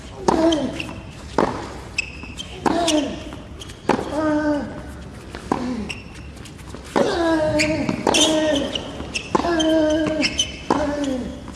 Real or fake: real